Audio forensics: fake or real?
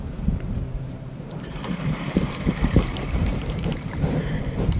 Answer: fake